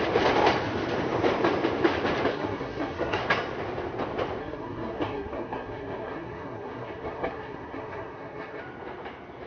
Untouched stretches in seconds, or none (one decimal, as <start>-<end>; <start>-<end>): 0.0-2.3; 3.2-4.4; 8.6-9.5